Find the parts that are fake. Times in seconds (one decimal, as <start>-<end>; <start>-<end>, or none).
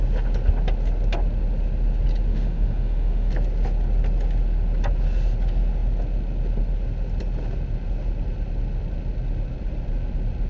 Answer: 2.3-3.3